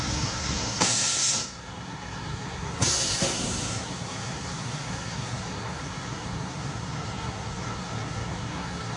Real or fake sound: fake